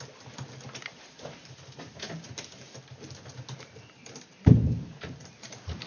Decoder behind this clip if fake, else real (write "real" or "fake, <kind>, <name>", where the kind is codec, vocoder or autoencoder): real